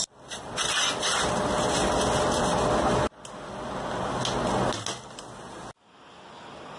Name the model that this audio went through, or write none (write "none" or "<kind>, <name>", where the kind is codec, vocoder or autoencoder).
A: none